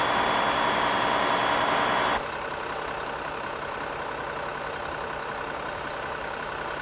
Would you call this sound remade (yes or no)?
no